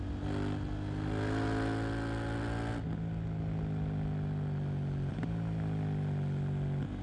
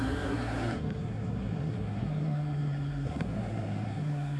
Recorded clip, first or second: first